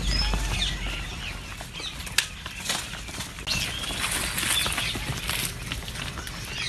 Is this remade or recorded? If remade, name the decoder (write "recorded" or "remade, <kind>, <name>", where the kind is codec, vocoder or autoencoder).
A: recorded